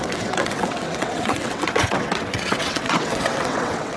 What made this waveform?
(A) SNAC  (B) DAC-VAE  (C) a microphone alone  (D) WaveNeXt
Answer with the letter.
D